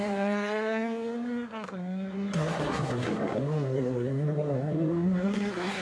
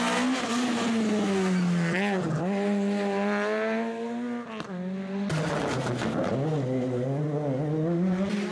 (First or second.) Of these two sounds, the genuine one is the second